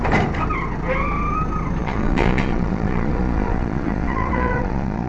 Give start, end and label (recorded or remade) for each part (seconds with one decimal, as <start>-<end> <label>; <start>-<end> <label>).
0.0-1.8 recorded; 1.8-5.1 remade